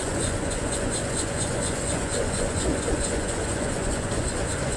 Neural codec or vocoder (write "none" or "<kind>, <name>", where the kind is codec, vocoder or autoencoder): vocoder, Vocos